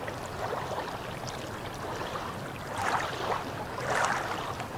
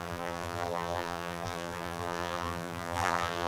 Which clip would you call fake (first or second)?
second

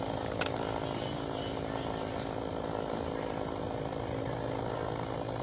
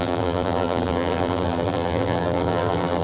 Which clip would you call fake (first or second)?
second